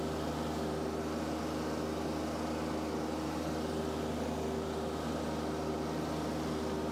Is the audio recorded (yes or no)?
yes